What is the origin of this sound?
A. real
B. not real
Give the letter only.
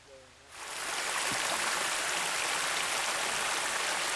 A